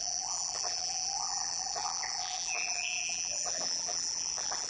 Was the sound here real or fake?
fake